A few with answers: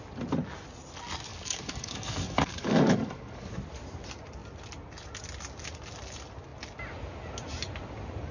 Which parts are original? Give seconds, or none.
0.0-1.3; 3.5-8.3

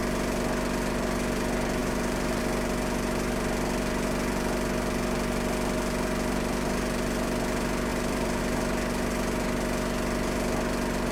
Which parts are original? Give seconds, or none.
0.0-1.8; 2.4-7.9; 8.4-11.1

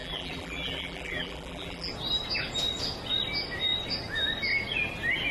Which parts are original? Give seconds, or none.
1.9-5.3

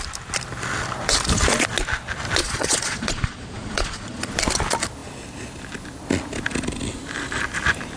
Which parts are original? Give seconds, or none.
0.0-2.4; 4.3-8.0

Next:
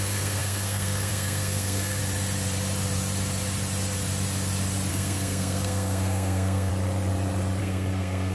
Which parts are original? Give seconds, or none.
2.0-4.9; 6.7-7.6